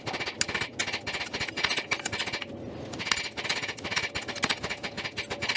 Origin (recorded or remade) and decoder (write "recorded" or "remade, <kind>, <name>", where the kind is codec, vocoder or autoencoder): recorded